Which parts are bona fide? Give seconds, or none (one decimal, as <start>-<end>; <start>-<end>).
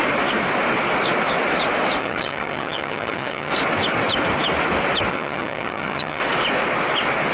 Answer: 0.0-2.0; 3.5-5.1; 6.2-7.3